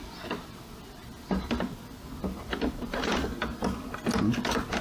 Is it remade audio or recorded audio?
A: recorded